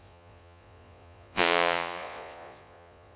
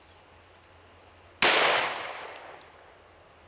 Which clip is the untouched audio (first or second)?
second